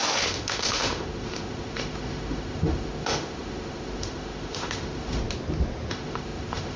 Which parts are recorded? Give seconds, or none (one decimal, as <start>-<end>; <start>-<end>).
5.2-5.9